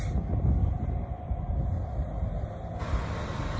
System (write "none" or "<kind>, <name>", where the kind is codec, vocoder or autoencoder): none